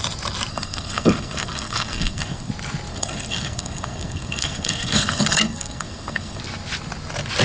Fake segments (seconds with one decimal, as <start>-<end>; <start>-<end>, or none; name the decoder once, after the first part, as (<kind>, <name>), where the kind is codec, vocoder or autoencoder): 0.5-2.5 (codec, SNAC); 2.9-6.4